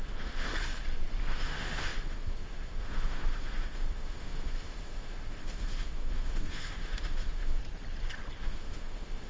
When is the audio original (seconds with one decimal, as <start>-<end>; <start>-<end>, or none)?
0.5-1.2; 7.6-8.4

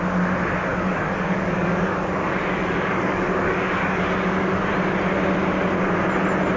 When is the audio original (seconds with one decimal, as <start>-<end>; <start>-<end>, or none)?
0.0-0.7; 4.7-6.6

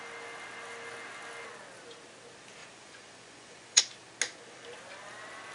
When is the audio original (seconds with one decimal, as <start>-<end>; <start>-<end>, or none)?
0.0-2.6; 3.8-5.5

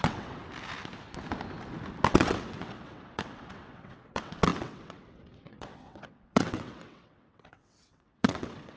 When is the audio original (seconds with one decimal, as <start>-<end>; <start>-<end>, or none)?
0.4-2.1

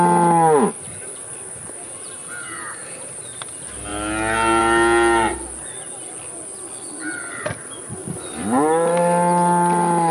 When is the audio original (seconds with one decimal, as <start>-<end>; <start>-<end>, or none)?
0.0-10.1

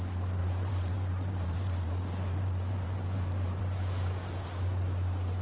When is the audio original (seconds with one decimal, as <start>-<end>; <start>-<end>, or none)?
0.0-0.4; 3.6-5.4

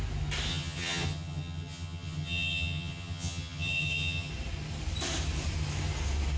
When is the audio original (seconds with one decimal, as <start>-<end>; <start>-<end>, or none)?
0.0-0.5; 4.3-6.4